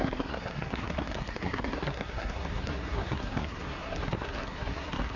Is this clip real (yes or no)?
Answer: no